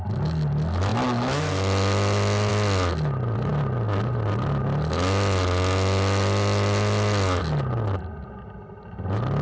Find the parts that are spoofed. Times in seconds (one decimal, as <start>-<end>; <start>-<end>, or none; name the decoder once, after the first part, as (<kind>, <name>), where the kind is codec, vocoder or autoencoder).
none